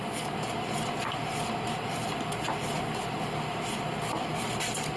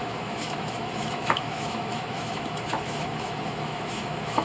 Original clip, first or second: first